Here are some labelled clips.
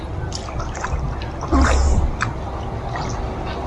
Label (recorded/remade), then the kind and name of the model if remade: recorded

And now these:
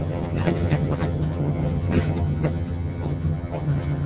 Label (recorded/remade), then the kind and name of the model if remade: remade, vocoder, HiFi-GAN